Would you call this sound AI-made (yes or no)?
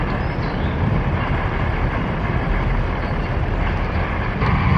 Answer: no